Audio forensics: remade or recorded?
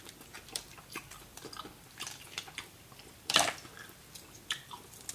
remade